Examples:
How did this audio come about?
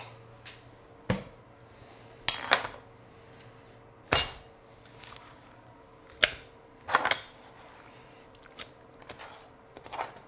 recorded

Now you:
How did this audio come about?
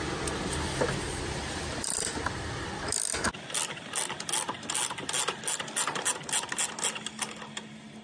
recorded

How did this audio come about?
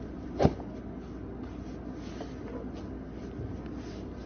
recorded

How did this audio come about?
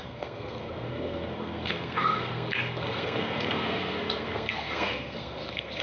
remade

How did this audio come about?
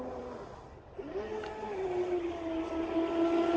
recorded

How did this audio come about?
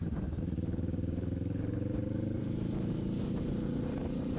remade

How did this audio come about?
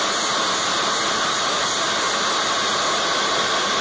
recorded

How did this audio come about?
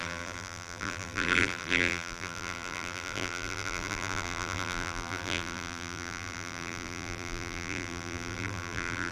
remade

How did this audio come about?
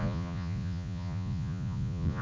remade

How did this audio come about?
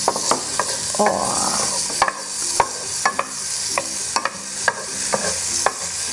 recorded